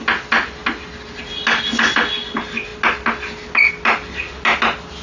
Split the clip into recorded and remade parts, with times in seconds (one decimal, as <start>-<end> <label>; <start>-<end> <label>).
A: 0.0-5.0 recorded